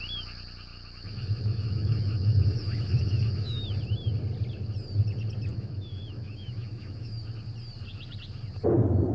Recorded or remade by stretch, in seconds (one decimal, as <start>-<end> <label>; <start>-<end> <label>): 0.0-0.7 recorded; 0.7-3.6 remade; 3.6-5.5 recorded; 5.5-7.1 remade; 7.1-9.1 recorded